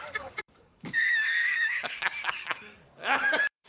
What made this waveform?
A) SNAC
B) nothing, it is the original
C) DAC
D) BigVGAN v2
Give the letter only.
C